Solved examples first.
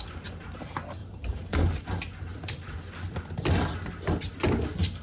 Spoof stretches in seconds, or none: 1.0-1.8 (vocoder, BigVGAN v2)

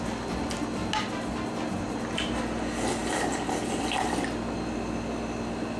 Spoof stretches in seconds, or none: none

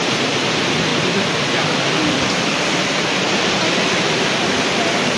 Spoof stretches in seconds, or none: 0.0-0.9 (vocoder, BigVGAN v2); 4.0-5.2

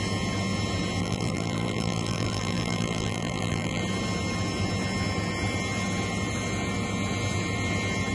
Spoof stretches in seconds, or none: 1.0-3.8 (vocoder, BigVGAN v2)